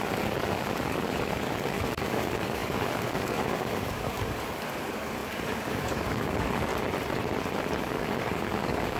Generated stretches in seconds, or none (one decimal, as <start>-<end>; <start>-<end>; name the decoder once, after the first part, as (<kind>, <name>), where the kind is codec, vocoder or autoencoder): 0.0-6.7 (codec, DAC); 7.8-9.0